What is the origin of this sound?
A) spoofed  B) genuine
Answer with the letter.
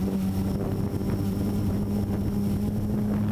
B